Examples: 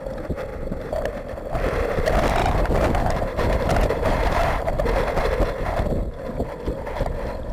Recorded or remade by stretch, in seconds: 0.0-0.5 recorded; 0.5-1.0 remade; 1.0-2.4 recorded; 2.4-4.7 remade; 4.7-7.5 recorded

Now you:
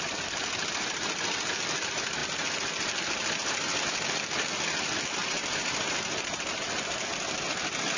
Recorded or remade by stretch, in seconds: 0.0-5.2 recorded; 5.2-6.7 remade; 6.7-8.0 recorded

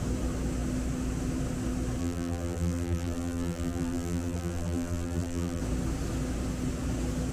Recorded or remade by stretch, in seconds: 0.0-2.0 recorded; 2.0-5.6 remade; 5.6-7.3 recorded

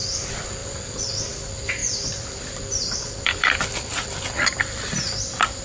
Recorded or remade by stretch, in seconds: 0.0-0.6 recorded; 0.6-1.1 remade; 1.1-1.8 recorded; 1.8-5.6 remade

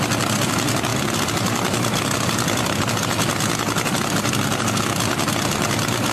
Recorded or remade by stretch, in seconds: 0.0-0.9 recorded; 0.9-4.6 remade; 4.6-6.1 recorded

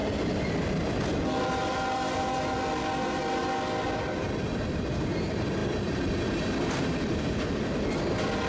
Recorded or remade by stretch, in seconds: 0.0-4.2 recorded; 4.2-8.5 remade

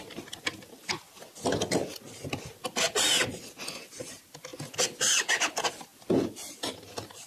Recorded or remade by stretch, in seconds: 0.0-1.8 remade; 1.8-2.4 recorded; 2.4-4.5 remade; 4.5-5.3 recorded; 5.3-7.3 remade